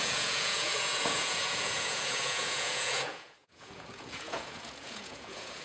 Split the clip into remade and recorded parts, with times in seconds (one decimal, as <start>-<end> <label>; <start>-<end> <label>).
0.0-5.6 remade